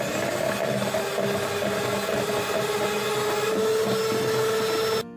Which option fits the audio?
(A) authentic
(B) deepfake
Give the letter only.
A